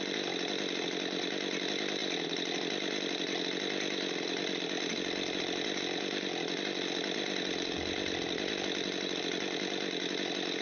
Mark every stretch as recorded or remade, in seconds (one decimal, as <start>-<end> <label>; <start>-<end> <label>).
0.0-10.6 recorded